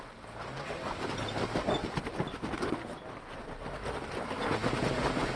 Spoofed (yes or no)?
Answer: no